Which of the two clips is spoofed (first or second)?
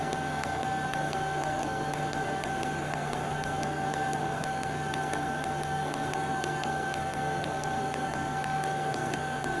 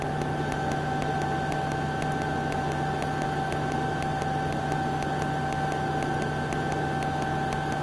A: first